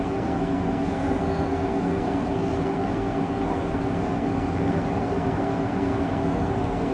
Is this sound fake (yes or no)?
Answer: yes